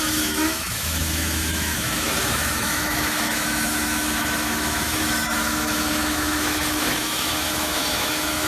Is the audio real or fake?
fake